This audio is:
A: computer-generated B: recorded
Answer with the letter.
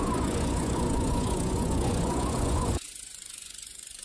A